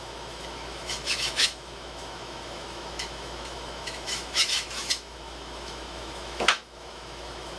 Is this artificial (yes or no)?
yes